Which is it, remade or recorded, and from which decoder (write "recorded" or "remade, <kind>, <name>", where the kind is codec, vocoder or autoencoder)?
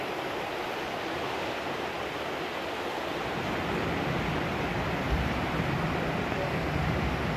recorded